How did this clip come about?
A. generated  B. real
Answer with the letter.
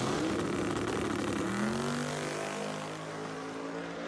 B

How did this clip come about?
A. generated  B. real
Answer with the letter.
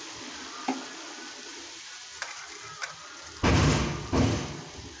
B